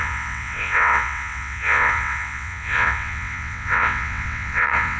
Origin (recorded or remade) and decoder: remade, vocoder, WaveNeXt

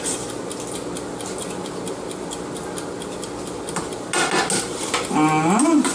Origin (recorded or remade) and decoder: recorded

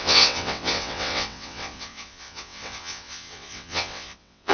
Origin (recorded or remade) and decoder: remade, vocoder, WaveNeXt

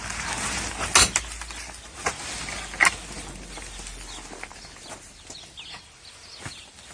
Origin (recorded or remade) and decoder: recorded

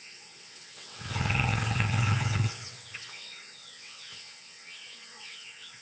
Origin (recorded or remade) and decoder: remade, vocoder, WaveNeXt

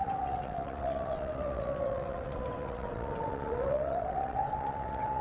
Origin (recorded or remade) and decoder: remade, vocoder, WaveNeXt